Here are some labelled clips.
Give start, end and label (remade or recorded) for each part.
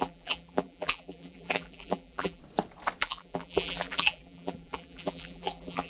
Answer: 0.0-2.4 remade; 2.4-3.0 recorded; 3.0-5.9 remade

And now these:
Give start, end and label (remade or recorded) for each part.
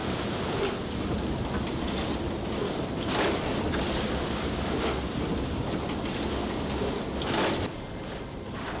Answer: 0.0-5.2 remade; 5.2-8.8 recorded